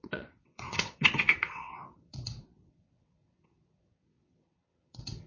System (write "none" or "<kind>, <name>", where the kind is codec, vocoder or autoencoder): vocoder, WaveNeXt